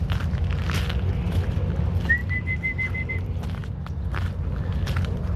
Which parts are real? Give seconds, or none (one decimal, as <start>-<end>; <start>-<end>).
0.0-5.4